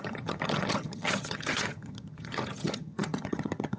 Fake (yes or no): yes